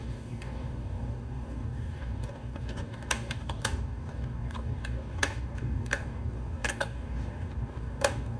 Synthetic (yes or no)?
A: yes